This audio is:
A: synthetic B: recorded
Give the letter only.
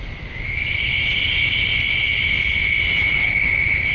B